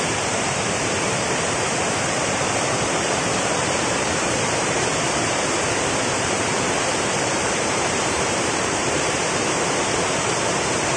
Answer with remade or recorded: remade